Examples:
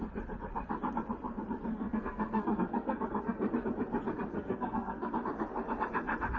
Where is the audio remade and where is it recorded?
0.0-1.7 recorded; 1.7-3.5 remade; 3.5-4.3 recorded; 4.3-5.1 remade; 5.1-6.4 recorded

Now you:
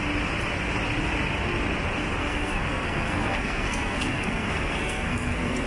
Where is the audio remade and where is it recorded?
0.0-2.2 recorded; 2.2-5.7 remade

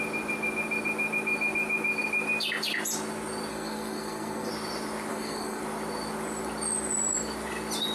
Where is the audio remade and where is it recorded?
0.0-3.5 recorded; 3.5-4.5 remade; 4.5-5.1 recorded; 5.1-5.6 remade; 5.6-7.9 recorded

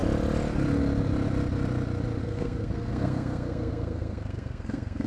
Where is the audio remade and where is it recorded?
0.0-2.2 recorded; 2.2-5.1 remade

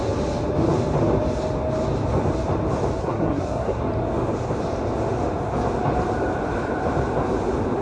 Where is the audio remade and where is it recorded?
0.0-3.0 recorded; 3.0-3.8 remade; 3.8-7.8 recorded